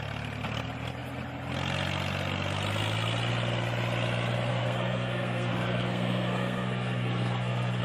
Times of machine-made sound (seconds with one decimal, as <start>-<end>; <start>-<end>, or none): 4.5-7.8